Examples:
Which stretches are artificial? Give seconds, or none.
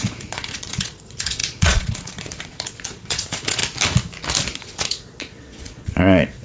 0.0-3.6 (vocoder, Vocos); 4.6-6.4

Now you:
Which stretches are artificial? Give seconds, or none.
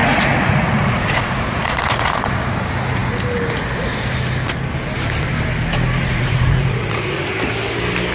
0.0-2.1 (vocoder, Vocos); 6.0-7.3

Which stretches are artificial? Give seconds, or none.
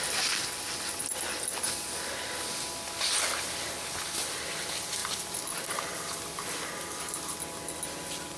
none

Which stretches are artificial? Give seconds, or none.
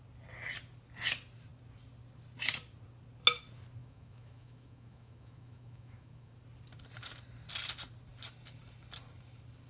3.8-6.3 (autoencoder, DAC-VAE)